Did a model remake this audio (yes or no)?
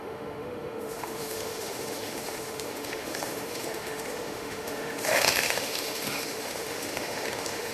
yes